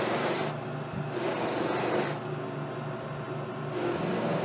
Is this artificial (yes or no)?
no